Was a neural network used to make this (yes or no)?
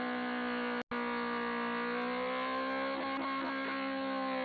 no